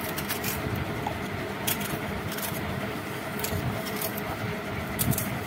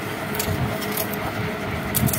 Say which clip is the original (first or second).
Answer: second